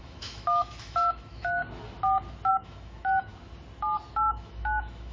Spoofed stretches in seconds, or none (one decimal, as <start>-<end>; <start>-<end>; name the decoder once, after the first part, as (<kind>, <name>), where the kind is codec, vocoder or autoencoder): 0.0-1.6 (autoencoder, DAC-VAE); 2.5-3.3; 4.1-5.1